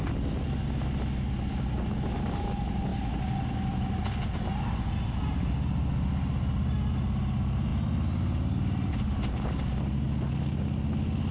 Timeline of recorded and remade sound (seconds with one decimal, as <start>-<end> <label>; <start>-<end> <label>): 0.0-11.3 recorded